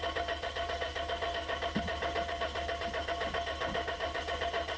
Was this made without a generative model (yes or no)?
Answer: yes